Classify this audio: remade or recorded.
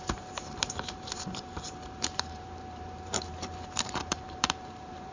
remade